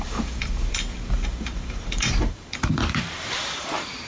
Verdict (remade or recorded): remade